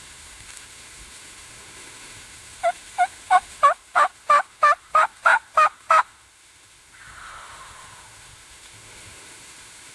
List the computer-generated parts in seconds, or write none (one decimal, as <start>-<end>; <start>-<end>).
0.0-9.9